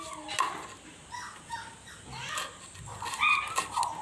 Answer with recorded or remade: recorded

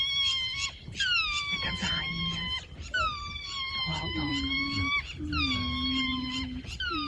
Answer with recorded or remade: recorded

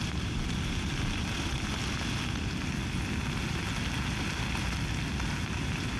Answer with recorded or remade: recorded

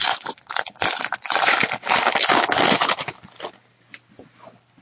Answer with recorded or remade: recorded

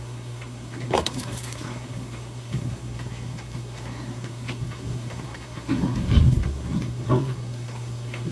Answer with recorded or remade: remade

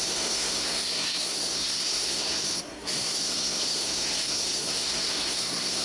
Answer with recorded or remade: remade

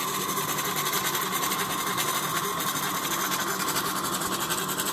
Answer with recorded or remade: recorded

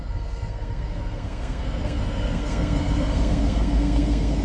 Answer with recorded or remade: remade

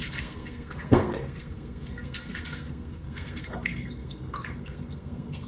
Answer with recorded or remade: remade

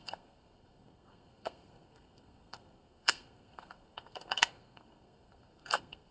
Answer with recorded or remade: remade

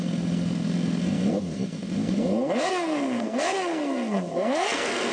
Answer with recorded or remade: remade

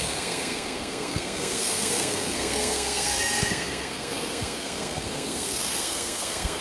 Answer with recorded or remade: remade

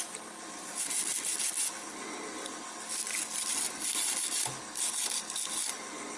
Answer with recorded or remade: recorded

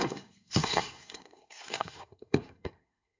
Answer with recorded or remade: remade